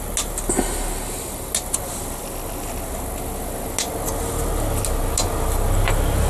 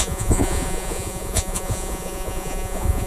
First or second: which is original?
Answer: first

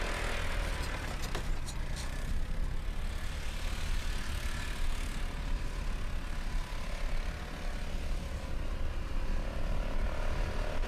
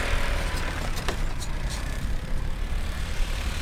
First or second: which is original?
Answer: first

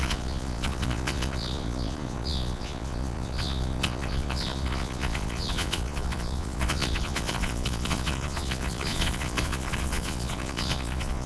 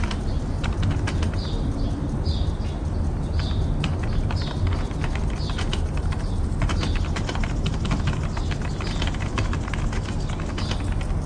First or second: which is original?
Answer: second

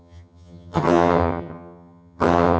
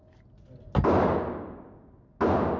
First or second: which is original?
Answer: second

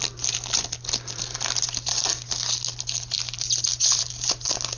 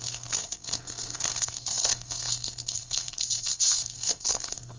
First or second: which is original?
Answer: first